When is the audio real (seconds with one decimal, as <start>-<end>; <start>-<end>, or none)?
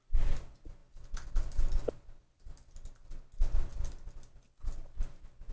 0.0-5.5